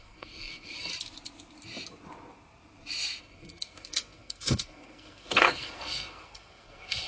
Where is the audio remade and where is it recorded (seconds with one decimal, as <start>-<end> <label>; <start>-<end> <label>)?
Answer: 0.0-0.9 remade; 0.9-3.2 recorded; 3.2-7.1 remade